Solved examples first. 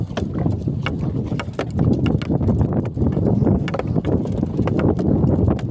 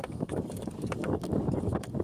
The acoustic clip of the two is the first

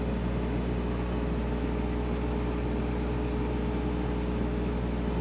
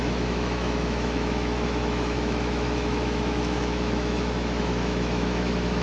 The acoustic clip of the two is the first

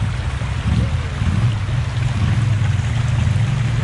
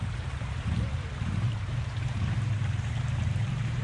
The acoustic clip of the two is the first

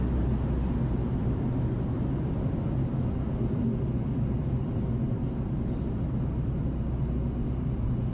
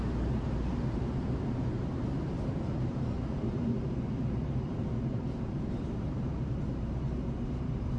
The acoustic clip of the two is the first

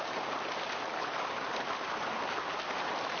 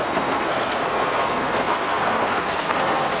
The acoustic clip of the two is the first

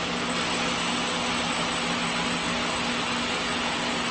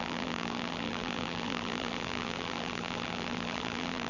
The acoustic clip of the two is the first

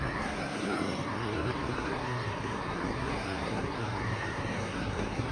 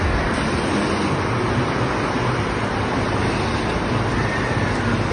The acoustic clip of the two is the second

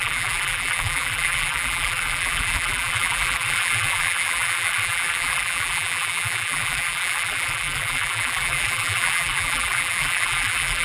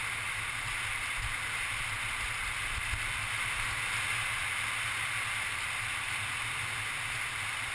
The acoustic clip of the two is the second